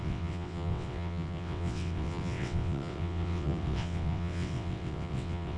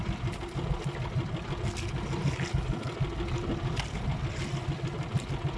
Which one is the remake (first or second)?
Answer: first